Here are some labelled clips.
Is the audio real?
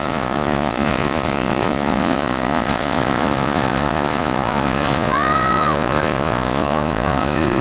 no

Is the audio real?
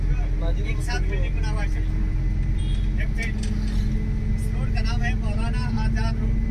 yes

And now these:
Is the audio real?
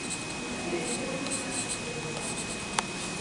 yes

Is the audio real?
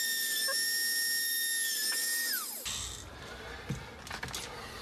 yes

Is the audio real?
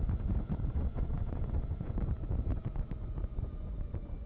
no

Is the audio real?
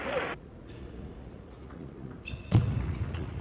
no